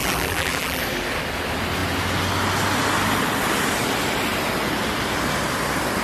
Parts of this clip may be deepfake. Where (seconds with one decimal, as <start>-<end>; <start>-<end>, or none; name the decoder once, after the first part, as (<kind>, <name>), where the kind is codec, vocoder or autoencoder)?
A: 0.0-0.8 (vocoder, BigVGAN v2)